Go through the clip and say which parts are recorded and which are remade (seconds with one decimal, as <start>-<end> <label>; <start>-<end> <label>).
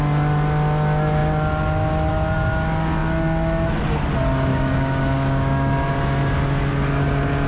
0.0-4.5 recorded; 4.5-5.9 remade; 5.9-7.5 recorded